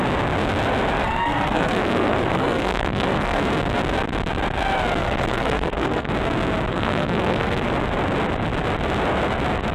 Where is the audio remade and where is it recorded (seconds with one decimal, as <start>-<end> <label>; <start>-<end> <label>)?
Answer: 0.0-1.0 recorded; 1.0-3.4 remade; 3.4-5.0 recorded; 5.0-6.1 remade; 6.1-6.7 recorded; 6.7-7.7 remade; 7.7-9.7 recorded